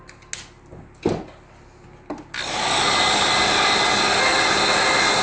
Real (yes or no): yes